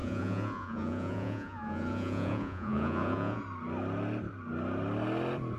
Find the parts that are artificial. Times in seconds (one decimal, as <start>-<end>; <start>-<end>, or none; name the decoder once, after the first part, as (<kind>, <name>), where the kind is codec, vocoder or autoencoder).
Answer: 0.0-3.4 (vocoder, Vocos)

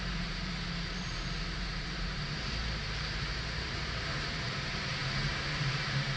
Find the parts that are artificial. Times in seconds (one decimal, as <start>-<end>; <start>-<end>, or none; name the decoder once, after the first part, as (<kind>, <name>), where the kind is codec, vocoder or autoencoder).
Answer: 0.0-6.2 (vocoder, BigVGAN v2)

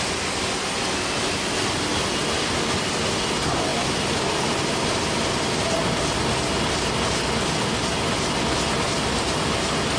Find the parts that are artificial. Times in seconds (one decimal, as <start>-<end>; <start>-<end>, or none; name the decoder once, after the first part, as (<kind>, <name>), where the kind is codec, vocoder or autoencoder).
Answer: none

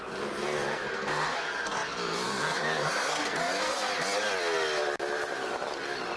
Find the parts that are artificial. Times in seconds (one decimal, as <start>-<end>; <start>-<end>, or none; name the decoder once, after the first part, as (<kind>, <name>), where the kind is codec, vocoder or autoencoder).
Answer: 0.0-3.9 (codec, SNAC)

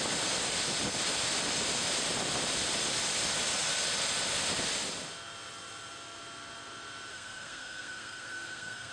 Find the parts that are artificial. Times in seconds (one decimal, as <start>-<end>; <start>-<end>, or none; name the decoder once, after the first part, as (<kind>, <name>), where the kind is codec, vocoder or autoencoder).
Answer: 7.1-8.9 (codec, SNAC)

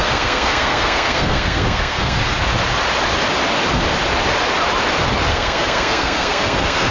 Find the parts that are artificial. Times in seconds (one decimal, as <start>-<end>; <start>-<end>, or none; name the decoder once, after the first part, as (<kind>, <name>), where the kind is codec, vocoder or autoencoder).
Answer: 0.0-2.2 (codec, SNAC); 5.3-6.9

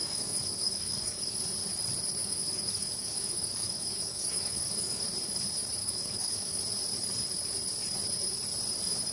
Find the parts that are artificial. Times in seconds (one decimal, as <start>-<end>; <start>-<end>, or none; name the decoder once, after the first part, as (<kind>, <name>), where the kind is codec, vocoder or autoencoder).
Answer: 0.0-1.4 (codec, DAC); 2.2-5.0; 5.8-6.6